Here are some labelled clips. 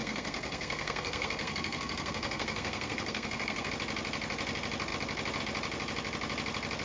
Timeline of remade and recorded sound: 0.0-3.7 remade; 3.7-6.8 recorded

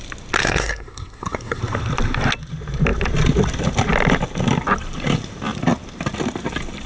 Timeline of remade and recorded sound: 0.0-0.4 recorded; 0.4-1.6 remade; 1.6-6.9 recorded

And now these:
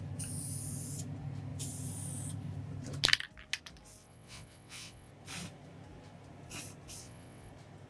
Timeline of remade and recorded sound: 0.0-4.0 recorded; 4.0-5.1 remade; 5.1-7.0 recorded; 7.0-7.5 remade; 7.5-7.9 recorded

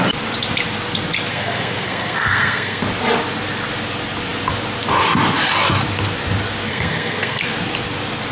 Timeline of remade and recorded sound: 0.0-1.3 recorded; 1.3-2.8 remade; 2.8-6.7 recorded; 6.7-7.4 remade; 7.4-8.3 recorded

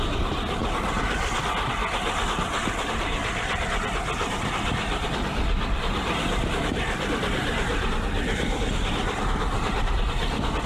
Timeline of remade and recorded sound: 0.0-7.7 recorded; 7.7-9.0 remade; 9.0-10.7 recorded

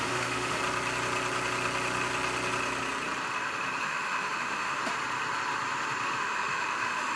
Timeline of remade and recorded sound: 0.0-0.6 remade; 0.6-3.8 recorded; 3.8-4.8 remade; 4.8-6.2 recorded; 6.2-7.2 remade

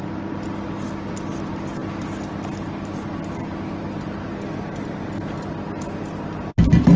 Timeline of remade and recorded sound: 0.0-7.0 recorded

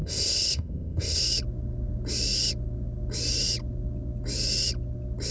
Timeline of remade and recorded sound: 0.0-1.2 remade; 1.2-5.3 recorded